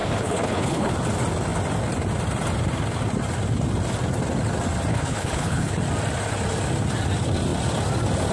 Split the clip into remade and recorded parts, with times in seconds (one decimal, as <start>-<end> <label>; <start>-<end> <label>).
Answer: 0.0-0.9 remade; 0.9-4.9 recorded; 4.9-5.8 remade; 5.8-8.3 recorded